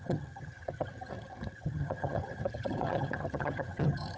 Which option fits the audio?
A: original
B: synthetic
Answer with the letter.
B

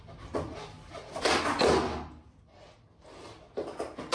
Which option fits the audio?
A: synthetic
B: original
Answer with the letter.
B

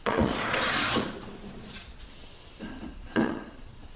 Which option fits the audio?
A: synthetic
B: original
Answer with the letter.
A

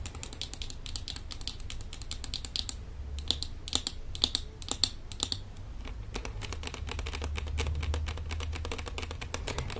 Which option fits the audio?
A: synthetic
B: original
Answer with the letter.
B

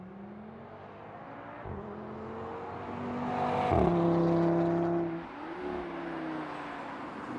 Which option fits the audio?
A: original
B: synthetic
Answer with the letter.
A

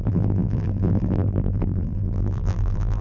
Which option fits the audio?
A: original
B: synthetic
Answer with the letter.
B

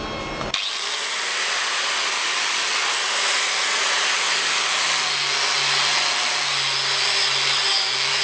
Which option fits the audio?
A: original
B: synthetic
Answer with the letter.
A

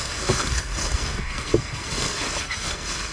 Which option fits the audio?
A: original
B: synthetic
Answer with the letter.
B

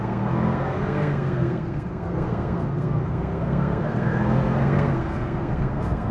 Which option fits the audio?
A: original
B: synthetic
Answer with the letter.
B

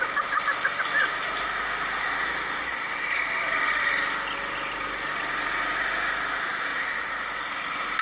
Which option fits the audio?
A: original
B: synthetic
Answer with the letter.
A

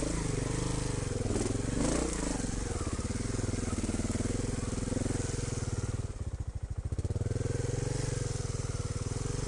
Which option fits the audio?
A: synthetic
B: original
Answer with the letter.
B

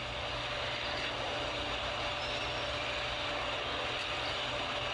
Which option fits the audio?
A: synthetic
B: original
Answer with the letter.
B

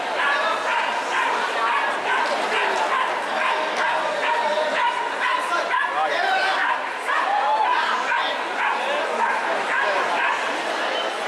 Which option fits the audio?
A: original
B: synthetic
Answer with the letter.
A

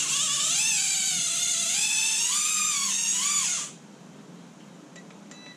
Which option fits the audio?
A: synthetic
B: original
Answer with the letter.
B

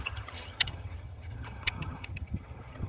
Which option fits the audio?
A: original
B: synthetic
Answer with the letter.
B